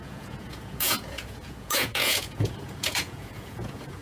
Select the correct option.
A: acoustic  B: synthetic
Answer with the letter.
B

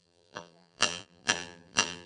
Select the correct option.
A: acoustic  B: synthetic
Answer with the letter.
B